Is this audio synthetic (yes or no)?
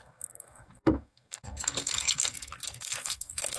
yes